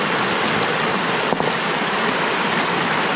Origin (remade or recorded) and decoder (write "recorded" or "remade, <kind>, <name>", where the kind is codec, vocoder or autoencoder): recorded